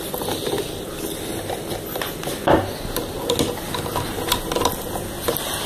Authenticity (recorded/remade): recorded